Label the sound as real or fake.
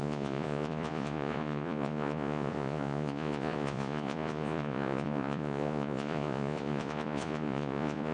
fake